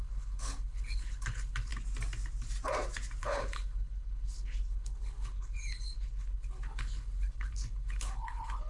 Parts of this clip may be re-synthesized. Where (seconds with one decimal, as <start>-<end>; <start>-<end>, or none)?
0.0-1.7; 3.2-8.7